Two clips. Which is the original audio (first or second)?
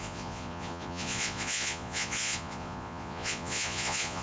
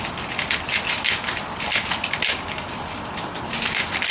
second